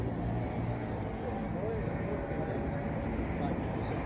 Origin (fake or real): real